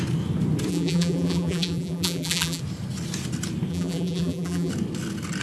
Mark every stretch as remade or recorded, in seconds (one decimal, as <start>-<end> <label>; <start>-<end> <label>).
0.0-0.7 recorded; 0.7-2.6 remade; 2.6-3.7 recorded; 3.7-4.7 remade; 4.7-5.4 recorded